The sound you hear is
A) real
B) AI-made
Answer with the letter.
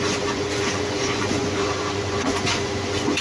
B